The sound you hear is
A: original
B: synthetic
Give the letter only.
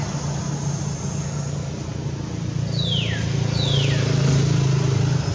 A